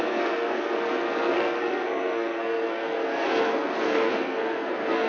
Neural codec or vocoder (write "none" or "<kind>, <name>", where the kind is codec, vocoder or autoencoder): codec, SNAC